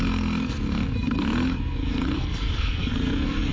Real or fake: fake